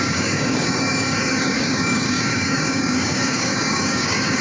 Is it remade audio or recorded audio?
remade